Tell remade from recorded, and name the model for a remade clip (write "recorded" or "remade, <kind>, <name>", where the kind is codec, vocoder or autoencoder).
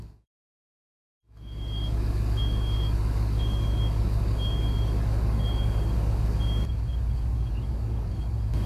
remade, codec, DAC